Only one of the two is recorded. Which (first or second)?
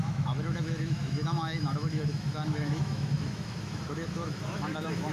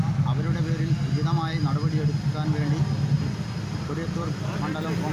second